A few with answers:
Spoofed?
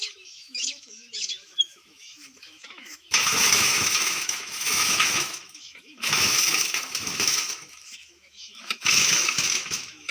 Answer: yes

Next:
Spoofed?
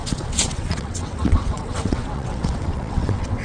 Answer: yes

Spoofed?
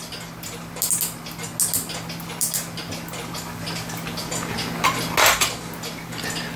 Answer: no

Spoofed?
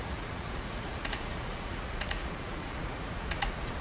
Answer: yes